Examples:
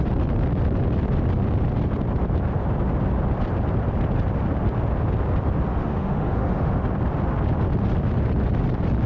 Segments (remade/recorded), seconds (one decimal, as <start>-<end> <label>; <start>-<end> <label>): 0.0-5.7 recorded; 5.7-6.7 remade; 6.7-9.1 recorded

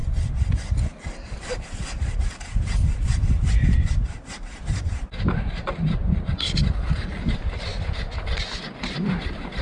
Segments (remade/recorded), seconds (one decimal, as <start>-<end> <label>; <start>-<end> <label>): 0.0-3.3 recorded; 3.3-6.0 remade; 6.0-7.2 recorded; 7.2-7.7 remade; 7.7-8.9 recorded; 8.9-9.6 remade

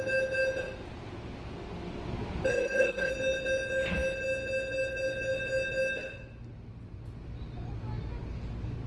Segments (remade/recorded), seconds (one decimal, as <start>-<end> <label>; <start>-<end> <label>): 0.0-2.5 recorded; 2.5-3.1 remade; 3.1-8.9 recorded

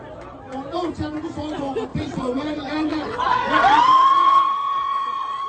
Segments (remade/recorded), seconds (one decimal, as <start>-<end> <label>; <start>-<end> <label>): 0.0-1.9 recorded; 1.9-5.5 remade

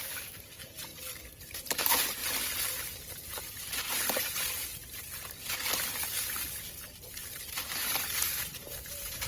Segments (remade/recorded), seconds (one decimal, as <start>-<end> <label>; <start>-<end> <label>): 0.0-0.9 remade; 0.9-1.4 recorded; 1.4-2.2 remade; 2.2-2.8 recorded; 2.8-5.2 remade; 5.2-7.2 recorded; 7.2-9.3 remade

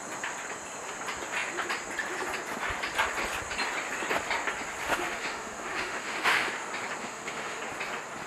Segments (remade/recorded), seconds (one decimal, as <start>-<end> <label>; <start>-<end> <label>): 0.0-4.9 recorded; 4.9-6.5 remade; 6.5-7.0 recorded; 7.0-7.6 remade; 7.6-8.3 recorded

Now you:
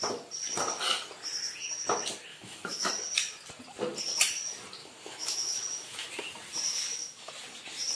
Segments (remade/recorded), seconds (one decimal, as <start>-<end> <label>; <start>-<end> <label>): 0.0-2.3 recorded; 2.3-2.9 remade; 2.9-4.8 recorded; 4.8-6.1 remade; 6.1-6.7 recorded; 6.7-7.3 remade; 7.3-8.0 recorded

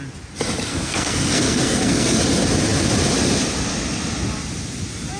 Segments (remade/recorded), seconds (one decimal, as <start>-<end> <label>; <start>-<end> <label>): 0.0-0.7 recorded; 0.7-2.2 remade; 2.2-5.2 recorded